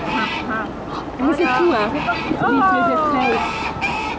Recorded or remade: recorded